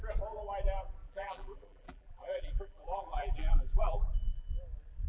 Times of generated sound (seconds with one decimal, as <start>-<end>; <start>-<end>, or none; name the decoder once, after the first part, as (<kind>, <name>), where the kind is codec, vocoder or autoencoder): 1.0-4.1 (vocoder, BigVGAN v2)